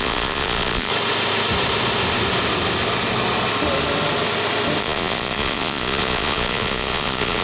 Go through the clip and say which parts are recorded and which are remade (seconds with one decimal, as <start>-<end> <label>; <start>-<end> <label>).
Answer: 0.0-0.9 remade; 0.9-4.8 recorded; 4.8-7.4 remade